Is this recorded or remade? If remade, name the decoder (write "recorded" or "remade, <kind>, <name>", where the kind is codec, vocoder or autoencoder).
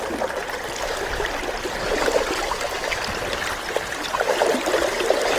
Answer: recorded